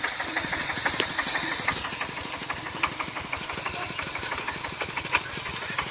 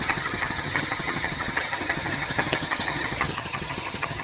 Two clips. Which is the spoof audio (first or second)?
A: second